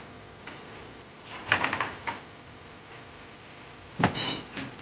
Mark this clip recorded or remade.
recorded